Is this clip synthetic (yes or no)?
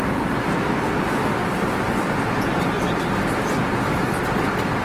no